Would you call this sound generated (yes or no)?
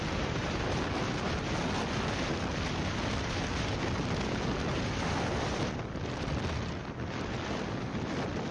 no